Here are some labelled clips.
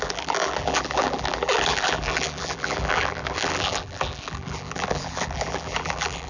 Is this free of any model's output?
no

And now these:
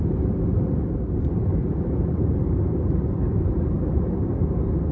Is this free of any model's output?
no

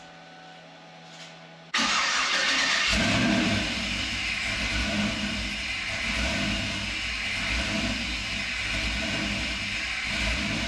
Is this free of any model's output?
yes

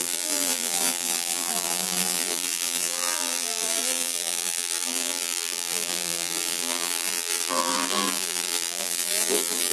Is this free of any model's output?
no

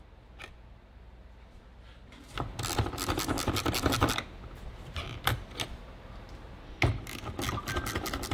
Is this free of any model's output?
yes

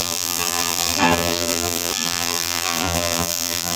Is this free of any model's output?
no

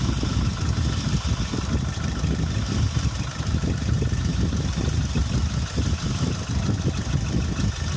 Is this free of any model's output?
yes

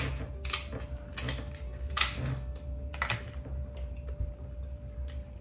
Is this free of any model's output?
yes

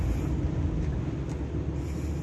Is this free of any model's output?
yes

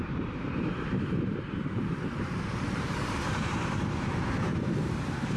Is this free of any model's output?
no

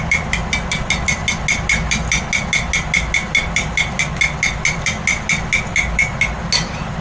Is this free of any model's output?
yes